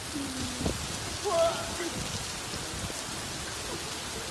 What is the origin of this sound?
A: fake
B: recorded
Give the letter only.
B